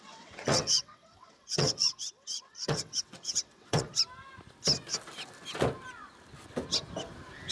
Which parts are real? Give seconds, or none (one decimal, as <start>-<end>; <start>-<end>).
3.9-7.5

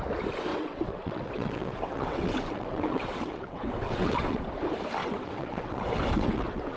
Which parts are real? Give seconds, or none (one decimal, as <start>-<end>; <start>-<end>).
0.0-0.5; 4.4-5.0

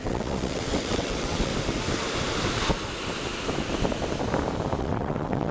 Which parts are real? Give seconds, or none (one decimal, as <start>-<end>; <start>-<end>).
1.5-4.8